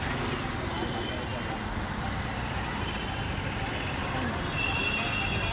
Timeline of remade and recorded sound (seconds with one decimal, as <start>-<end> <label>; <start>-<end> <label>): 0.0-5.5 recorded